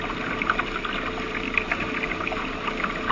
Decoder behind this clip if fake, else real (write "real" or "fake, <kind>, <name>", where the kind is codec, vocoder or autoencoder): real